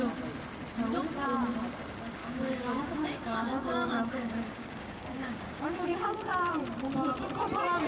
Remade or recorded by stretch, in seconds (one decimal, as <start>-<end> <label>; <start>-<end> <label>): 0.0-2.2 recorded; 2.2-6.5 remade; 6.5-7.9 recorded